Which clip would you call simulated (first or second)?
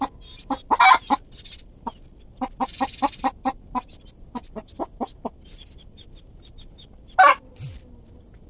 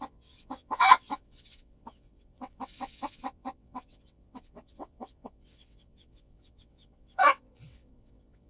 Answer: second